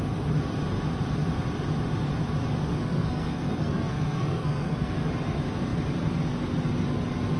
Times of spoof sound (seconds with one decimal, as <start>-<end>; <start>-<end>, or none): 2.8-5.1